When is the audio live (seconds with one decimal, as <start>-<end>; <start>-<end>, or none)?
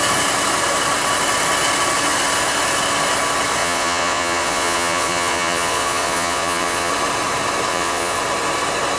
0.0-3.6; 6.9-7.7; 8.2-9.0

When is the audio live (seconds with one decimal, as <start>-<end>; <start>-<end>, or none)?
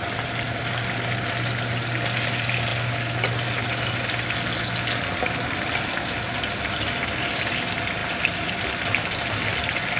0.0-10.0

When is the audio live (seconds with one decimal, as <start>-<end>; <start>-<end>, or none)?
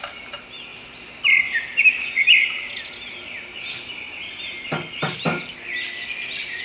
0.0-6.6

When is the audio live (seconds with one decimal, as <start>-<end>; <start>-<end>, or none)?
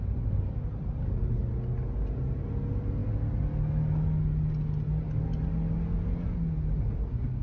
0.0-7.4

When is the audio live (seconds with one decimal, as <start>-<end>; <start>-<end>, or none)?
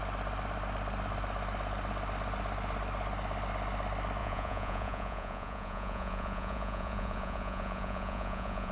0.0-4.2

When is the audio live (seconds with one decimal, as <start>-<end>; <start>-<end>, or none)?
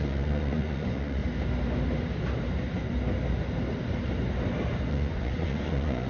1.2-4.9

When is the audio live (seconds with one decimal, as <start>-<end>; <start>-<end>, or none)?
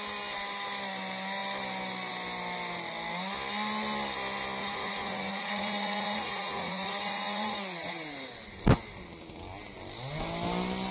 0.0-4.6; 7.9-10.9